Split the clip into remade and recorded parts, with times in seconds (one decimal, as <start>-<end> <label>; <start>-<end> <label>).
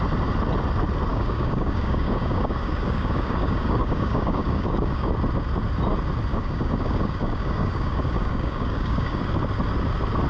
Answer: 0.0-1.1 recorded; 1.1-5.1 remade; 5.1-6.3 recorded; 6.3-9.2 remade; 9.2-10.3 recorded